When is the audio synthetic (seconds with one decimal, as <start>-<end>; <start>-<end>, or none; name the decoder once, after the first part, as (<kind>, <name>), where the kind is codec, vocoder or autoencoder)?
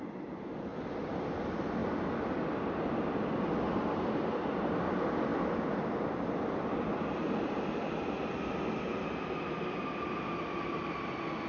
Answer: 0.7-1.3 (vocoder, BigVGAN v2); 1.8-4.1